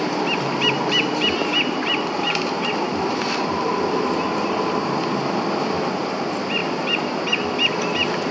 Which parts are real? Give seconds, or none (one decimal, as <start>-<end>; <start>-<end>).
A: 0.0-8.3

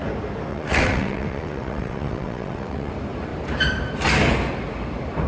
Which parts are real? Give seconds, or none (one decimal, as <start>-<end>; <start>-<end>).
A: 0.0-0.5; 2.9-5.3

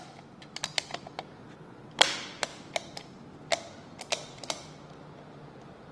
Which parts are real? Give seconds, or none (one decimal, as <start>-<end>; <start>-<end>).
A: 0.0-1.4; 1.9-5.9